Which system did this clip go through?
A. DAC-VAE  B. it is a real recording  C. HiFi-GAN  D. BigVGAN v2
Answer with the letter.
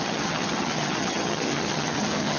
C